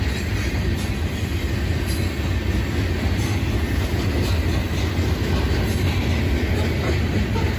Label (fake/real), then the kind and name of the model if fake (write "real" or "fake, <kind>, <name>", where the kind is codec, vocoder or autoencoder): real